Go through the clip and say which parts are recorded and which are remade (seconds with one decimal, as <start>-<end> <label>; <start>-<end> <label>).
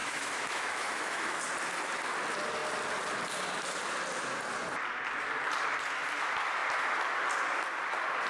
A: 0.0-1.4 remade; 1.4-8.3 recorded